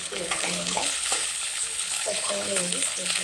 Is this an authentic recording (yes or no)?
no